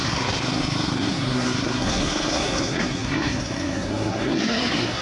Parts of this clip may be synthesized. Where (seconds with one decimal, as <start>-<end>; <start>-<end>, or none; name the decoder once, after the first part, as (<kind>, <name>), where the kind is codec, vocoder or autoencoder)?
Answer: 0.0-5.0 (codec, SNAC)